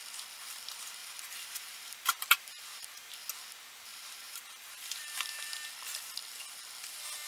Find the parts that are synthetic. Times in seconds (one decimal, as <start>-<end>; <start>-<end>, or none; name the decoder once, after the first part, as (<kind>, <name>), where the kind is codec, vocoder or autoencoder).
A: 1.0-3.1 (vocoder, BigVGAN v2); 3.9-5.5